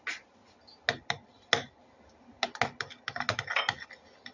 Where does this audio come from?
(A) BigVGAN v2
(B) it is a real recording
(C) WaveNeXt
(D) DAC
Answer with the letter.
B